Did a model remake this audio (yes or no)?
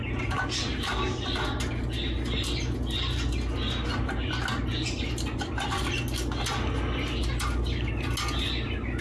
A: no